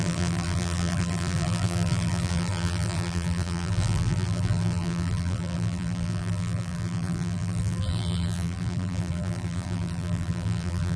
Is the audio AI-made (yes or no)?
yes